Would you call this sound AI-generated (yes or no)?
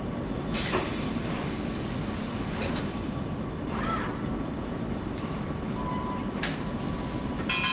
no